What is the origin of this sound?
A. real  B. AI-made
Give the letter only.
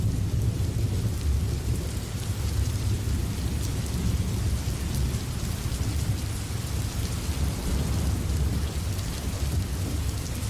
A